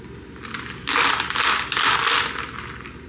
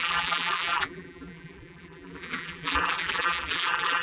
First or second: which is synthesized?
second